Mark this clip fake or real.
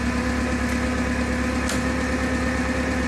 real